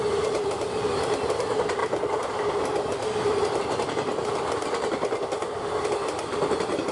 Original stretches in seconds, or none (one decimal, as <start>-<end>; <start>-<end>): 0.0-6.9